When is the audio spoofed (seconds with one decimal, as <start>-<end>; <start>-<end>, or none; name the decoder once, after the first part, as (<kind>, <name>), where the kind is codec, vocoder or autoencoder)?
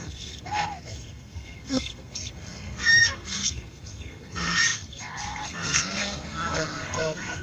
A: 0.0-7.4 (codec, SNAC)